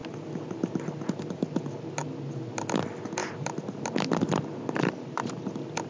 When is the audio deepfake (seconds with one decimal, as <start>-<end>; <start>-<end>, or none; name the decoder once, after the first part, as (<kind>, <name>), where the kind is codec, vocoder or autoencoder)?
none